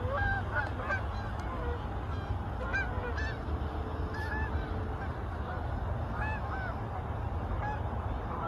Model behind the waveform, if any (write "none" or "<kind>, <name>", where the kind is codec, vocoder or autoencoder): none